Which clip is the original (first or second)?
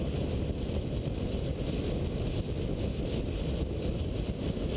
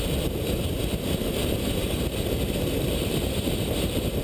first